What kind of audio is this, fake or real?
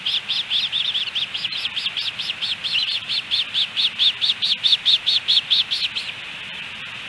real